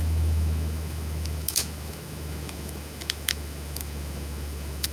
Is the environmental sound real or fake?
fake